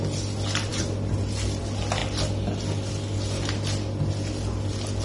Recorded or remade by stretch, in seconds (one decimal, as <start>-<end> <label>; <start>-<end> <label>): 0.0-5.0 recorded